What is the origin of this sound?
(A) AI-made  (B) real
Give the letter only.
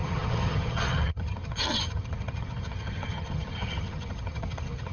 A